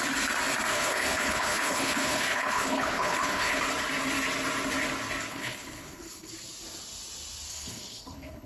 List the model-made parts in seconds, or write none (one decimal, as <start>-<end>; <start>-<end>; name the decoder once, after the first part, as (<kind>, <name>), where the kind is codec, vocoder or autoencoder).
0.7-3.6 (codec, HILCodec); 5.3-6.3; 7.5-8.5